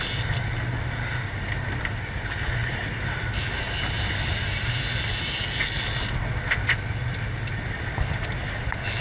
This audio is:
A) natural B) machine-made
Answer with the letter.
A